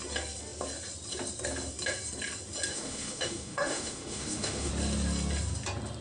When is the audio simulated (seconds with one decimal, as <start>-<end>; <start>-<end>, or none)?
2.7-4.7